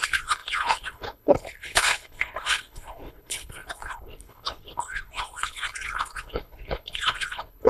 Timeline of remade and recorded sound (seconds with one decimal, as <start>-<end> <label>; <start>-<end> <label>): 0.0-7.7 remade